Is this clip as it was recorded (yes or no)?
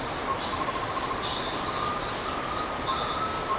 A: yes